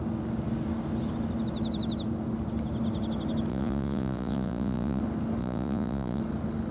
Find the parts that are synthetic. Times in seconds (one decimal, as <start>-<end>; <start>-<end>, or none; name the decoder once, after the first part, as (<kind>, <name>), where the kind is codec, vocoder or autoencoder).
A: 3.5-5.0 (vocoder, Vocos); 5.4-6.2